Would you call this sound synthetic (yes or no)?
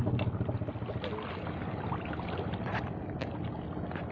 no